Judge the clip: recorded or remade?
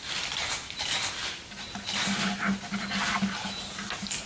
recorded